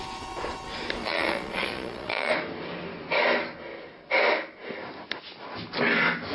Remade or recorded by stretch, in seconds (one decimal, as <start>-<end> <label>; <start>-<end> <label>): 0.0-1.0 recorded; 1.0-2.3 remade; 2.3-6.3 recorded

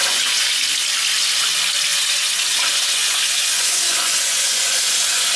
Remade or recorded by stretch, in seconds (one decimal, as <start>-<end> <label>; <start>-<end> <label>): 0.0-0.6 remade; 0.6-1.9 recorded; 1.9-5.4 remade